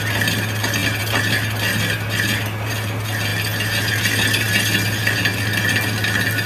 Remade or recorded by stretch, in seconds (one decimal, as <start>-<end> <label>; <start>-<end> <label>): 0.0-6.5 recorded